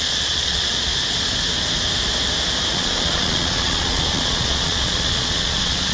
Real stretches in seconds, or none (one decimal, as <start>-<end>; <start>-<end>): 0.9-2.7